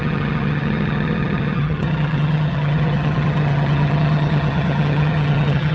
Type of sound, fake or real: fake